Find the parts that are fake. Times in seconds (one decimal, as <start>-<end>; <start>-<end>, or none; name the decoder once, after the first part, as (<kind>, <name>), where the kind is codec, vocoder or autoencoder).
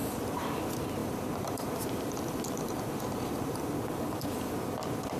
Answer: 0.0-0.6 (vocoder, BigVGAN v2); 1.0-3.7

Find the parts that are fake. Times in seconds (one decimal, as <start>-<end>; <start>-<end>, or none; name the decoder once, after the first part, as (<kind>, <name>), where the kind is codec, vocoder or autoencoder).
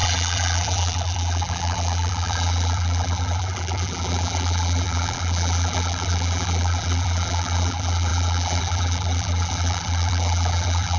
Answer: 0.0-11.0 (vocoder, BigVGAN v2)